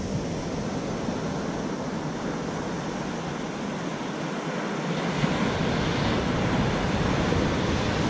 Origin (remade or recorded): recorded